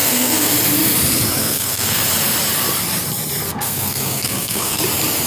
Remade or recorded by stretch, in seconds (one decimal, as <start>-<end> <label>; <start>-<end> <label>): 0.0-0.5 remade; 0.5-1.4 recorded; 1.4-2.0 remade; 2.0-3.5 recorded; 3.5-4.8 remade; 4.8-5.3 recorded